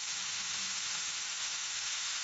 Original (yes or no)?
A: no